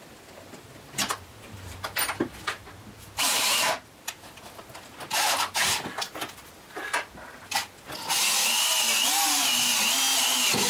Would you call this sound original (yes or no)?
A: yes